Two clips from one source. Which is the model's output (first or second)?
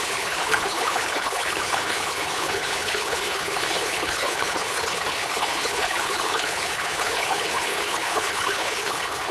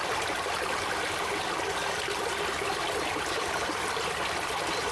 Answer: first